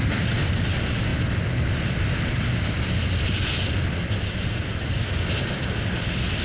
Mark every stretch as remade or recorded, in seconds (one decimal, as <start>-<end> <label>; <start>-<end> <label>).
0.0-6.4 recorded